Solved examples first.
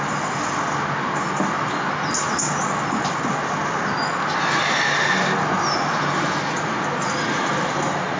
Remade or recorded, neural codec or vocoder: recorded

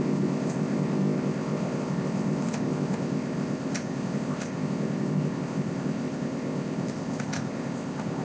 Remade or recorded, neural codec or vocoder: remade, codec, ZipCodec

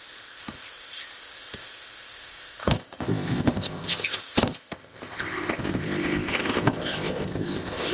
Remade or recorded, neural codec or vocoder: remade, codec, ZipCodec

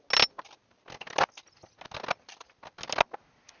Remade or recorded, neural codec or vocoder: recorded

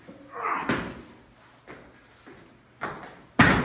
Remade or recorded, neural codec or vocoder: recorded